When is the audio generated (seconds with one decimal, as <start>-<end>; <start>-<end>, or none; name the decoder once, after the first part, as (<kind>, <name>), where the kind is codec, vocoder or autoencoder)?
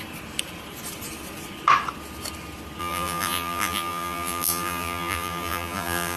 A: 2.8-6.2 (vocoder, BigVGAN v2)